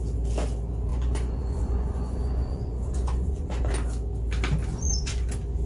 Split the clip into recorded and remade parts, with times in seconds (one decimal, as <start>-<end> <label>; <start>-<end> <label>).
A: 0.0-0.9 recorded; 0.9-3.7 remade; 3.7-4.7 recorded; 4.7-5.3 remade; 5.3-5.7 recorded

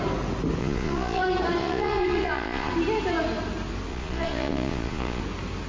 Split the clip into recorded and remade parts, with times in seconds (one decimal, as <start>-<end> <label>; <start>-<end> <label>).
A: 0.0-0.6 recorded; 0.6-1.2 remade; 1.2-1.6 recorded; 1.6-2.7 remade; 2.7-3.9 recorded; 3.9-5.2 remade; 5.2-5.7 recorded

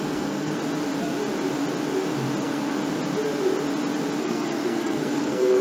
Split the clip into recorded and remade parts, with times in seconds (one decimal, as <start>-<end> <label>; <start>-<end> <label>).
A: 0.0-0.6 remade; 0.6-2.4 recorded; 2.4-2.8 remade; 2.8-4.2 recorded; 4.2-5.6 remade

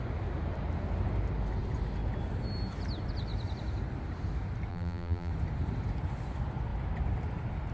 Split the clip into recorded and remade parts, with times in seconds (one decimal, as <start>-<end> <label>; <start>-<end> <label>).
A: 0.0-4.7 recorded; 4.7-5.3 remade; 5.3-7.7 recorded

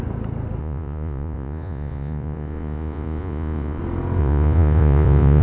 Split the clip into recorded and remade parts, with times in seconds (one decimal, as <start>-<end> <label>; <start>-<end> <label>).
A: 0.0-0.6 recorded; 0.6-3.8 remade; 3.8-4.2 recorded; 4.2-5.4 remade

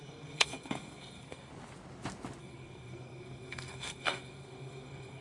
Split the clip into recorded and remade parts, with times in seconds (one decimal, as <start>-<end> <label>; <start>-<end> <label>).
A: 0.0-1.5 remade; 1.5-2.4 recorded; 2.4-5.2 remade

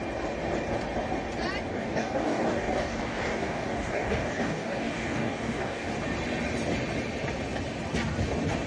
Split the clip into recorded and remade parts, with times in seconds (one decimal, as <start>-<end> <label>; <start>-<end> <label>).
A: 0.0-1.7 recorded; 1.7-5.9 remade; 5.9-8.7 recorded

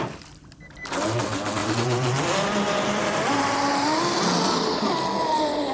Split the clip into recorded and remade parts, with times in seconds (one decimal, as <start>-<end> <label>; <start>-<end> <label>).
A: 0.0-1.6 recorded; 1.6-2.2 remade; 2.2-3.0 recorded; 3.0-3.7 remade; 3.7-5.7 recorded